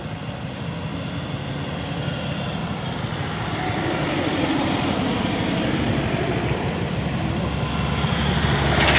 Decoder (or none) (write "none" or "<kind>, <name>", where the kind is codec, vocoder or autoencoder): none